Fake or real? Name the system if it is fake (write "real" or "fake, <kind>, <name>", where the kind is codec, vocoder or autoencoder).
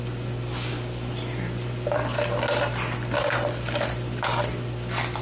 real